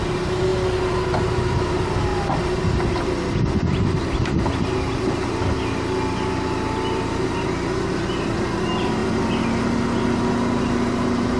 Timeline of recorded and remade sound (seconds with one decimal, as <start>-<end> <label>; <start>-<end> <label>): 0.0-11.4 recorded